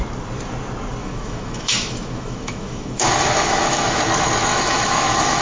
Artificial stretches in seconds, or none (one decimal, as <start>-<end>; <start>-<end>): 1.0-4.0; 4.5-5.4